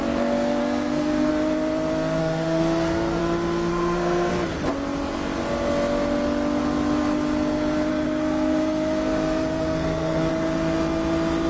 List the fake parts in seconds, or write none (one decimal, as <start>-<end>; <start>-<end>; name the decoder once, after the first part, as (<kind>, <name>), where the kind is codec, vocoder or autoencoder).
0.6-1.3 (codec, SNAC); 2.2-3.2; 3.7-4.3; 7.9-10.3